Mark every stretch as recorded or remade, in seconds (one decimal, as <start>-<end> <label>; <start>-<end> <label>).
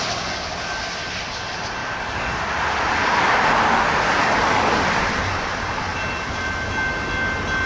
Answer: 0.0-1.8 recorded; 1.8-2.4 remade; 2.4-4.2 recorded; 4.2-4.7 remade; 4.7-7.7 recorded